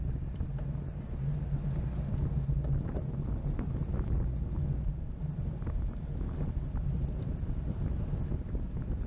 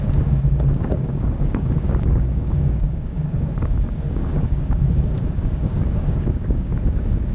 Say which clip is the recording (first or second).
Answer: first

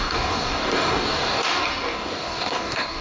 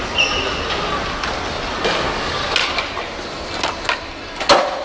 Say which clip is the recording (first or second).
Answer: second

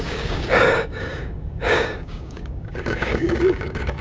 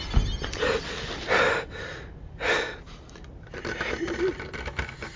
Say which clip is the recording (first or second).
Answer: second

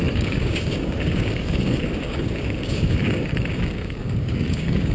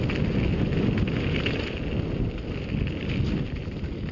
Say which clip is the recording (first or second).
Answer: second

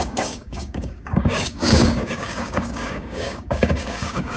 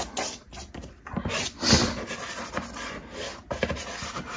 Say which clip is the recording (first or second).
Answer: second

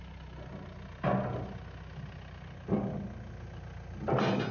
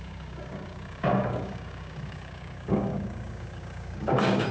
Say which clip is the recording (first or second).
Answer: first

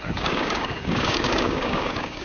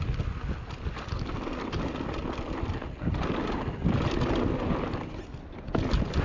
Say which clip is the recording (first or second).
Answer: second